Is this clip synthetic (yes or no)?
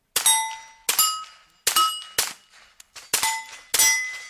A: no